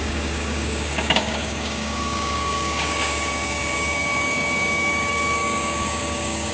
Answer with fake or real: fake